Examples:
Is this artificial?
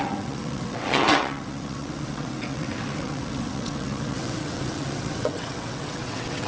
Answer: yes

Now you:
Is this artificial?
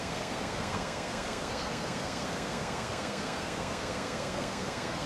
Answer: yes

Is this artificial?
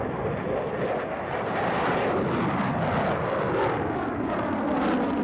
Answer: no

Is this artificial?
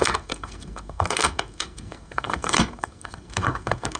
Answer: yes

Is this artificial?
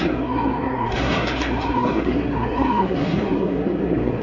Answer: yes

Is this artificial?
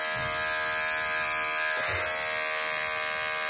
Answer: no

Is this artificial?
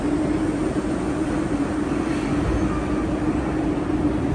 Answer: no